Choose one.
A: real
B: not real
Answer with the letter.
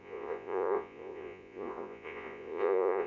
B